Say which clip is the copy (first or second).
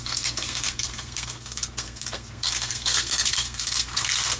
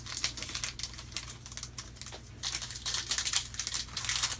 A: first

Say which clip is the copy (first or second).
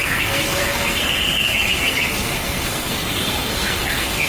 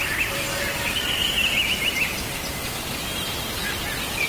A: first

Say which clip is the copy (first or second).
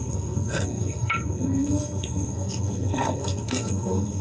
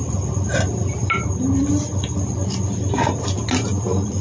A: first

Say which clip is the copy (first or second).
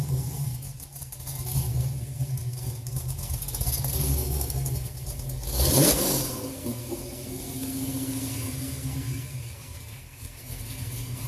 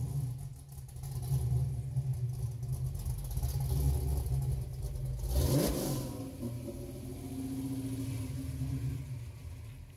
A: first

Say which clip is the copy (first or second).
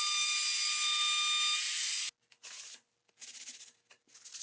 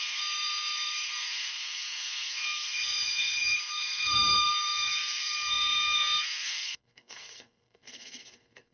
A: second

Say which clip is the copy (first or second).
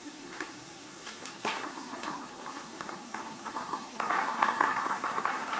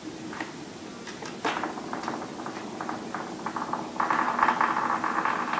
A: first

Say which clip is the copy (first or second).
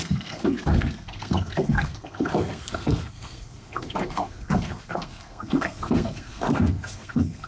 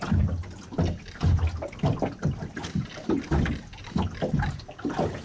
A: first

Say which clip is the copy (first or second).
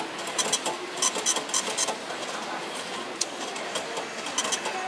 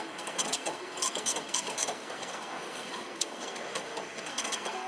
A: second